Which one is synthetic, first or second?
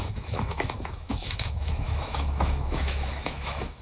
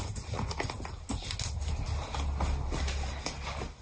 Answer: first